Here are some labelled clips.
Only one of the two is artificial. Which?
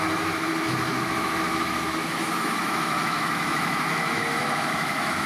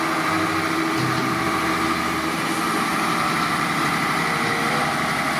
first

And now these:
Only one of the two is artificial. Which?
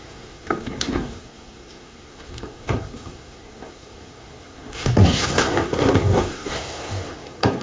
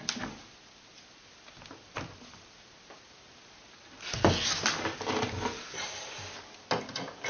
first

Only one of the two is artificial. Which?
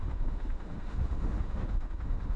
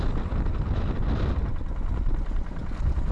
first